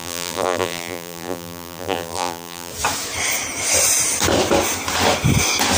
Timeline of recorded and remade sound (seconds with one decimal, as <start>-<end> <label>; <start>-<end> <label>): 0.0-2.7 remade; 2.7-5.8 recorded